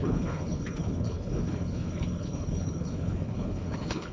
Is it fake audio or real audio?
fake